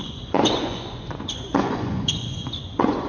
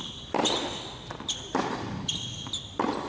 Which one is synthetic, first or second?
first